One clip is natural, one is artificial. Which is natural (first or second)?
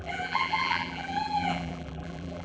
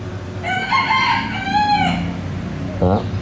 second